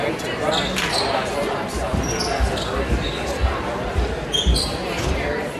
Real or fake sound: real